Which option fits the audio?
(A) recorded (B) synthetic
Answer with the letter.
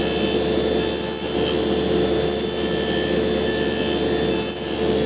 A